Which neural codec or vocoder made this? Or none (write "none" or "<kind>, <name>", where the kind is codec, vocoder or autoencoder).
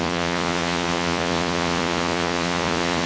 vocoder, Vocos